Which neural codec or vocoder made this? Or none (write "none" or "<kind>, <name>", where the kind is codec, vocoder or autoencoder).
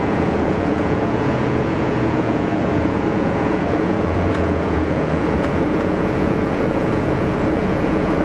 vocoder, Vocos